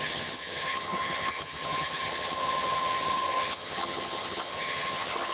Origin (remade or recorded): remade